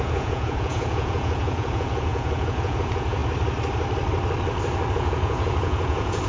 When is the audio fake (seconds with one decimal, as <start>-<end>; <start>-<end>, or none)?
0.0-3.2; 4.9-6.3